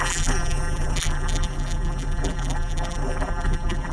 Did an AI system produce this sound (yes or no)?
yes